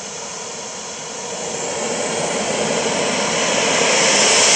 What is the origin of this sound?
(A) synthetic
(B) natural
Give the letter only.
B